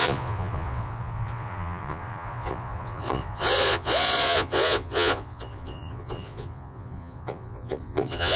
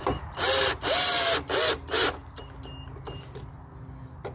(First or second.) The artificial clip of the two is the first